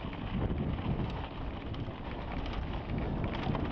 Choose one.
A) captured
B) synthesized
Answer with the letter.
A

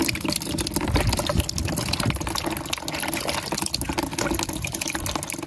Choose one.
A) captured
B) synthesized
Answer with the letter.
A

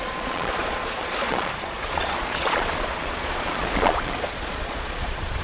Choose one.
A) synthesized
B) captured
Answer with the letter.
A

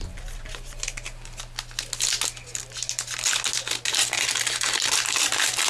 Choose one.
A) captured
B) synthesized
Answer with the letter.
A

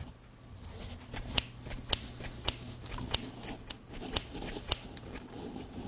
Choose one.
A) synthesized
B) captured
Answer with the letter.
B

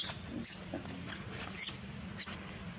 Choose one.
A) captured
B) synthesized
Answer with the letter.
A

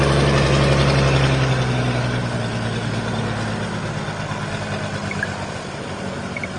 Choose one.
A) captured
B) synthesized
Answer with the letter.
A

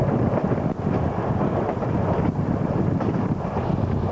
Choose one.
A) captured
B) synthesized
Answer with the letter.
A